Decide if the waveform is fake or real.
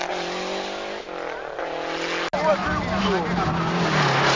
real